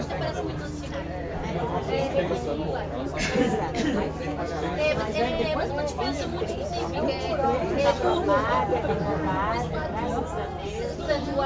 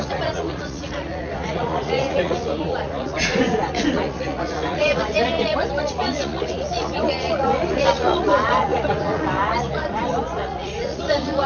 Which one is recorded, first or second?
first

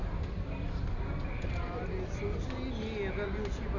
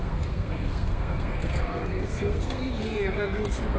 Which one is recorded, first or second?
first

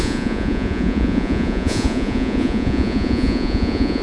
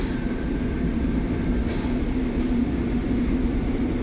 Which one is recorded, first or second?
second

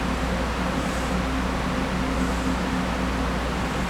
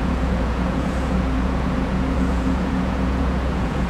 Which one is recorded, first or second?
first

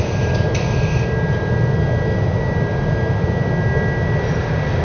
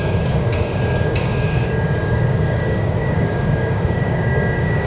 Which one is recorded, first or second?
first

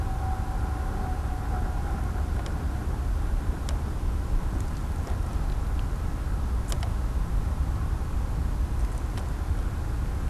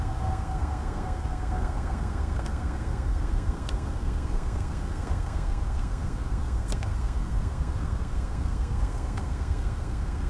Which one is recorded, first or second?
first